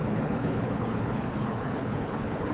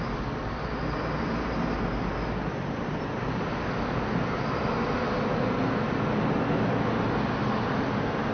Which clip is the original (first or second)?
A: second